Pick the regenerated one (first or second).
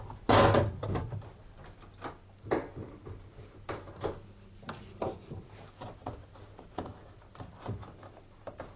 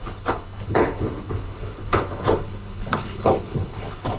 second